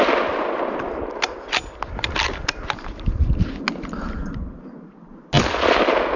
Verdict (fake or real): real